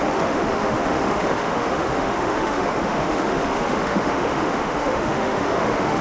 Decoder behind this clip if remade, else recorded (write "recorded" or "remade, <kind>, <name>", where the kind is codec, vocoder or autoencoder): remade, autoencoder, DAC-VAE